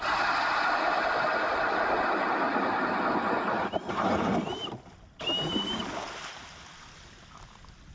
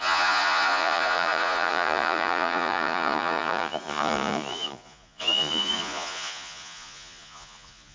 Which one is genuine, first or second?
first